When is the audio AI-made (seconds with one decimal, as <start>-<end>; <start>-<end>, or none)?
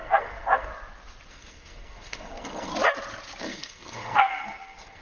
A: 0.0-0.7; 1.3-2.7; 3.4-5.0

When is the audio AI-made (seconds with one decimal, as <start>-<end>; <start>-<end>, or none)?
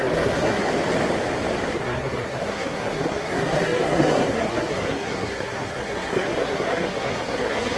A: 0.0-0.7; 1.7-7.8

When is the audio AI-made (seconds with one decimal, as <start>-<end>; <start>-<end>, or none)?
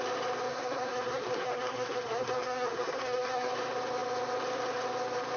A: 0.5-3.5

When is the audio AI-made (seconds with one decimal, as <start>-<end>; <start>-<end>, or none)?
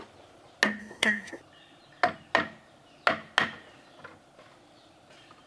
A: 0.8-1.4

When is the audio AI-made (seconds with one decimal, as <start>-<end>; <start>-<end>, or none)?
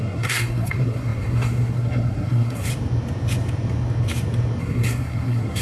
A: 0.0-2.7; 4.6-5.6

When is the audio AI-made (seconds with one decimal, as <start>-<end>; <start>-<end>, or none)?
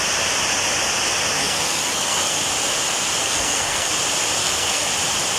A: 1.4-2.4; 3.2-3.9; 4.4-4.9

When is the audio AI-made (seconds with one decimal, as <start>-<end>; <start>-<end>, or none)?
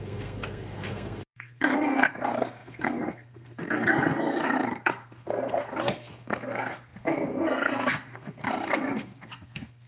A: 0.0-9.9